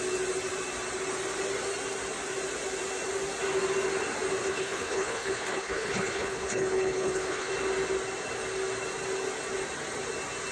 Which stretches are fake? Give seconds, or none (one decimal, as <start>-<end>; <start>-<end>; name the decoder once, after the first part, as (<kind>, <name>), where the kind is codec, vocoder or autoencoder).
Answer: 4.4-7.5 (codec, HILCodec)